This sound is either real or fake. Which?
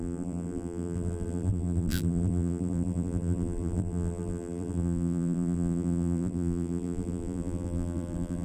fake